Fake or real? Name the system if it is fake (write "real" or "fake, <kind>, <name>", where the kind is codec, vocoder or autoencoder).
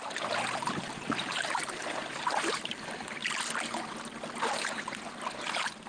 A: real